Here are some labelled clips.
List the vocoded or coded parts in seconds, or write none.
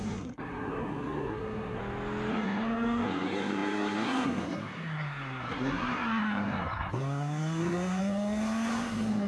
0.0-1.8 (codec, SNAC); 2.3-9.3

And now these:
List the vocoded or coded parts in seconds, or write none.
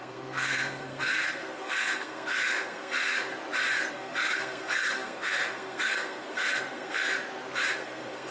0.0-3.3 (codec, SNAC); 3.9-7.1; 7.7-8.3